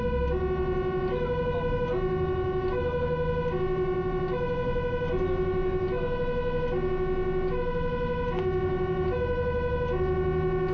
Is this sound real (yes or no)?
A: yes